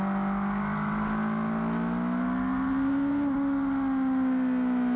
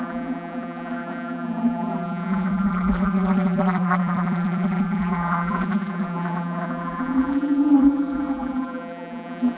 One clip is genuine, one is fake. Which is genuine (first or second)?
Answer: first